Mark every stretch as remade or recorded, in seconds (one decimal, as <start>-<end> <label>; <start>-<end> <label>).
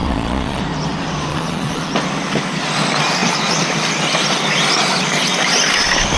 0.0-0.6 remade; 0.6-1.3 recorded; 1.3-1.9 remade; 1.9-6.2 recorded